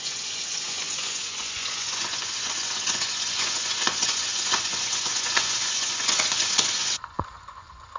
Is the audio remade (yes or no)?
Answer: yes